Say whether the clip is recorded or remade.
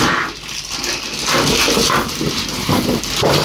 recorded